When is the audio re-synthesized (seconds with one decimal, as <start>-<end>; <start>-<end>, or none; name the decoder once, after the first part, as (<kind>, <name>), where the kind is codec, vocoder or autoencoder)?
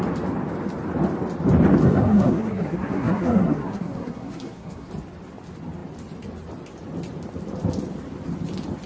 1.8-4.9 (codec, SNAC)